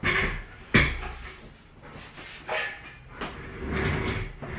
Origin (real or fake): real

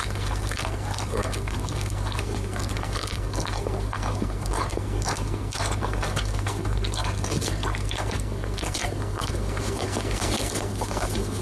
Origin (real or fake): fake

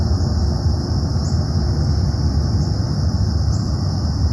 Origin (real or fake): real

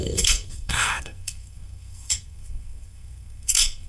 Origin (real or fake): fake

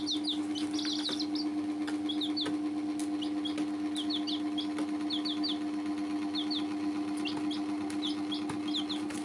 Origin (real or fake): real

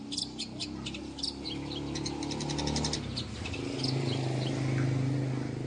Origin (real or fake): real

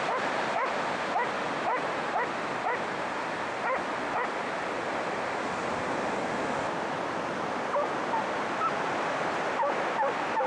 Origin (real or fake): real